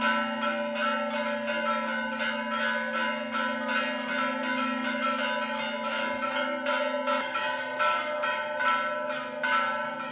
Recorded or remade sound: recorded